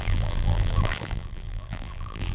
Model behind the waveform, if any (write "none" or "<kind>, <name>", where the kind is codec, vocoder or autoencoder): vocoder, BigVGAN v2